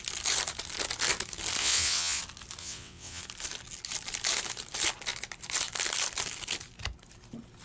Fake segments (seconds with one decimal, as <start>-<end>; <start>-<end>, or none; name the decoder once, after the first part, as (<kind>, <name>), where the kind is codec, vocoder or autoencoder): 1.6-2.2 (vocoder, WaveNeXt); 2.6-3.2

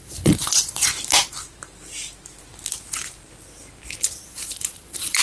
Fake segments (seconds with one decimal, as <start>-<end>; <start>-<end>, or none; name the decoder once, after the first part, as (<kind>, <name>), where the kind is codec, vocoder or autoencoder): 0.0-0.9 (vocoder, Vocos); 4.0-5.2

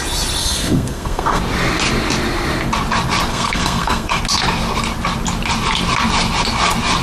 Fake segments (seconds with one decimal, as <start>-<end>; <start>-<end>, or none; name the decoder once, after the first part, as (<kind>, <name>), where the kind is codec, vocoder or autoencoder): 0.4-1.4 (codec, SNAC); 3.3-4.2

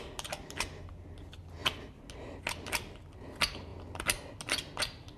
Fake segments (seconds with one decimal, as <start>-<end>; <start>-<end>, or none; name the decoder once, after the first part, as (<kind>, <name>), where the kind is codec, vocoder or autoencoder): none

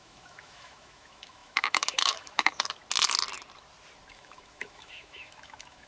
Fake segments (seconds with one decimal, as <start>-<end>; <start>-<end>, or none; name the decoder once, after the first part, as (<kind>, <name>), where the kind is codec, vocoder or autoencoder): 0.0-2.8 (autoencoder, DAC-VAE); 4.1-5.9

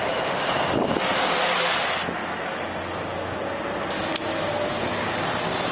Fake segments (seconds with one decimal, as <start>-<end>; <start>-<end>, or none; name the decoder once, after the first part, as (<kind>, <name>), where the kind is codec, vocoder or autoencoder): none

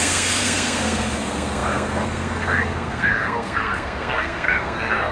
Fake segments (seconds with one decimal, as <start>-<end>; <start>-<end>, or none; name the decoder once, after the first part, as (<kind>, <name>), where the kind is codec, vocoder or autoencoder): 0.0-5.1 (codec, SNAC)

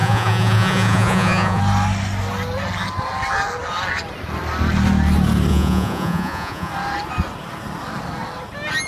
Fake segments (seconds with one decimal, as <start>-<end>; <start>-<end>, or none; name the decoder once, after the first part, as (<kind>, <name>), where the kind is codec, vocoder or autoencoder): 0.0-1.6 (vocoder, Vocos); 5.5-6.7